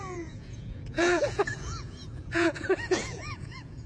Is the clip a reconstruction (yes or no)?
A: yes